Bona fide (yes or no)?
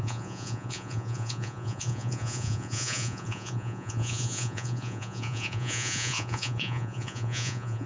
no